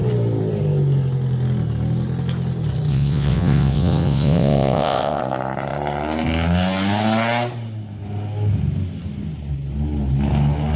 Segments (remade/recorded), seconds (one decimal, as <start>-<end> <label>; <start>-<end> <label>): 0.0-2.9 recorded; 2.9-5.2 remade; 5.2-10.8 recorded